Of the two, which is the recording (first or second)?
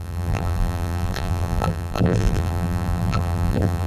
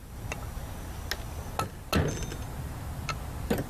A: second